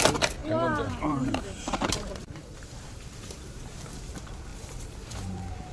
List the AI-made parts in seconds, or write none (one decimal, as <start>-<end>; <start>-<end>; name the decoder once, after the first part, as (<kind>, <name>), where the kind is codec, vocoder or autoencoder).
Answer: 0.4-3.8 (vocoder, BigVGAN v2); 4.5-5.3